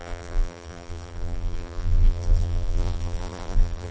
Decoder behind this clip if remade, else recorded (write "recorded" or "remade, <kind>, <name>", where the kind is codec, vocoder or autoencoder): remade, vocoder, BigVGAN v2